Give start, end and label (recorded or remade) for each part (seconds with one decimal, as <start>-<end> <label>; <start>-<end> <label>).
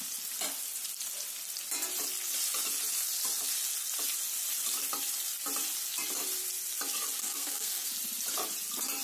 0.0-7.2 recorded; 7.2-7.9 remade; 7.9-9.0 recorded